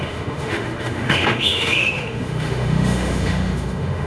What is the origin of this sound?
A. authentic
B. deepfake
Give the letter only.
B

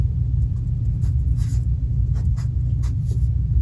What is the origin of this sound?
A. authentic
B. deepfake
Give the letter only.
A